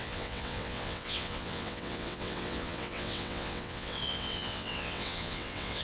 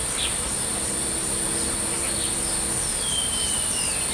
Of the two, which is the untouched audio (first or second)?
second